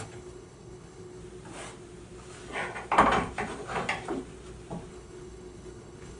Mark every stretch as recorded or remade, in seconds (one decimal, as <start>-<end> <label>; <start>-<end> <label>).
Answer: 0.0-1.2 remade; 1.2-4.9 recorded; 4.9-6.2 remade